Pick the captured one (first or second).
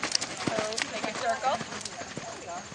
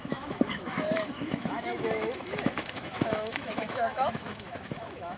first